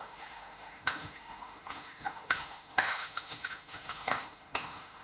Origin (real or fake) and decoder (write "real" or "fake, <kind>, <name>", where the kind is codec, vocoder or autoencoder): fake, autoencoder, DAC-VAE